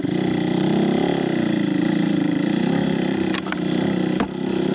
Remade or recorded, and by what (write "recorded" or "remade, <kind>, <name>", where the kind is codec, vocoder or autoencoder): remade, vocoder, BigVGAN v2